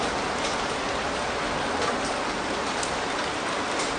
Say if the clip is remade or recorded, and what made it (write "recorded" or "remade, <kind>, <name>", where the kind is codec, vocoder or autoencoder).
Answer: recorded